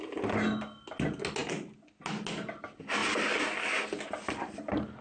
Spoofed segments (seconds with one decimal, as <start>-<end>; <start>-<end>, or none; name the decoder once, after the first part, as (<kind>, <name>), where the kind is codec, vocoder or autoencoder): none